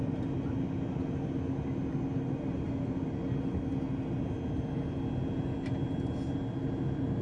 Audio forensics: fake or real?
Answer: real